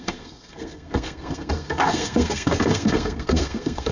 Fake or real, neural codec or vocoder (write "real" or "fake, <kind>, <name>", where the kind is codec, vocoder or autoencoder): fake, codec, SNAC